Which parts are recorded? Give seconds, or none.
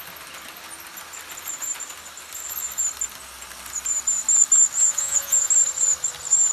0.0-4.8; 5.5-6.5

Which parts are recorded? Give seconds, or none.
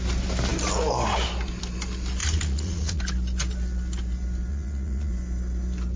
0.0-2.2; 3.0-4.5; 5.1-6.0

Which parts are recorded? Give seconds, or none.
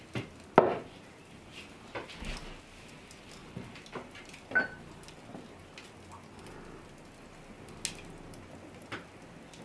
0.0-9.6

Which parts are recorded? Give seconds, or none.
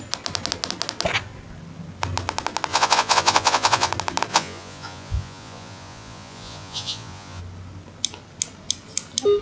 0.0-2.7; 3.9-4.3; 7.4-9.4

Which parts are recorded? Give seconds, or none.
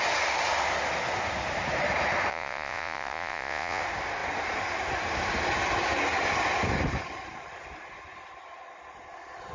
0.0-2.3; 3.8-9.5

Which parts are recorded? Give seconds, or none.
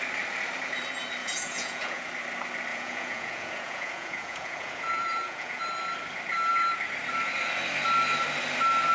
0.0-1.2; 2.0-2.7; 5.6-8.9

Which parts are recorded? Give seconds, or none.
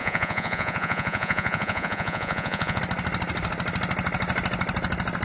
2.8-5.2